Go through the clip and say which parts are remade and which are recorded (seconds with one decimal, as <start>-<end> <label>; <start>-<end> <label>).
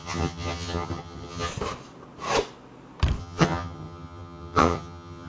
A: 0.0-1.5 remade; 1.5-3.2 recorded; 3.2-5.3 remade